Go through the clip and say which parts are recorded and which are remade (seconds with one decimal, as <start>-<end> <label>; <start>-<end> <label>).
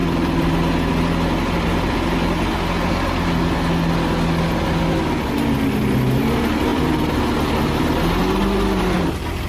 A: 0.0-0.5 remade; 0.5-6.7 recorded; 6.7-7.2 remade; 7.2-8.4 recorded; 8.4-9.0 remade; 9.0-9.5 recorded